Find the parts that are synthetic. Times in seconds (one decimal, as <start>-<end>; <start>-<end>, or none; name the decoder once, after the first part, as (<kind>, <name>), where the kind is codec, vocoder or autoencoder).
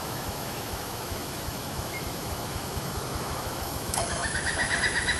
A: 0.0-5.2 (autoencoder, DAC-VAE)